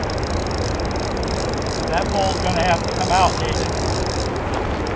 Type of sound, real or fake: real